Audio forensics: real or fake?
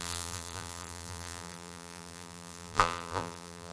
fake